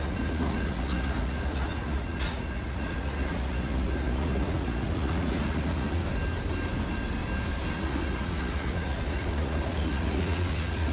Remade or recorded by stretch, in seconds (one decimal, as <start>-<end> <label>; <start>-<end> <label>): 0.0-6.0 remade; 6.0-7.7 recorded; 7.7-10.9 remade